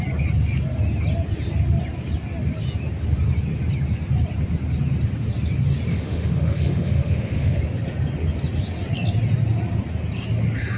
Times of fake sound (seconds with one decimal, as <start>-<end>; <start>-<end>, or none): 5.9-7.6